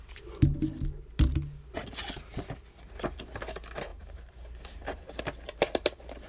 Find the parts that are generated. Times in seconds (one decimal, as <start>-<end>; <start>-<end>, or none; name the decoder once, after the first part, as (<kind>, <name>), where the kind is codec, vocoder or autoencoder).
3.9-5.2 (vocoder, BigVGAN v2)